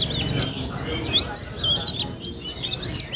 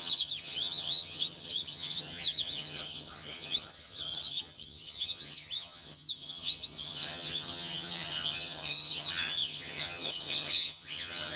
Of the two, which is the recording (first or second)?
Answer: first